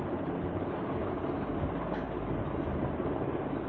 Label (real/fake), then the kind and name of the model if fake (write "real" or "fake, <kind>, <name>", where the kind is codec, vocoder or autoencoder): real